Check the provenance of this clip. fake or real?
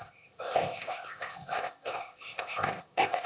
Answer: fake